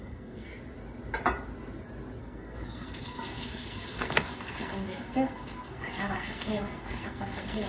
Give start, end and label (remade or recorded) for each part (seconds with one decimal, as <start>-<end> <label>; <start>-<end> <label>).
0.0-0.5 remade; 0.5-2.2 recorded; 2.2-7.7 remade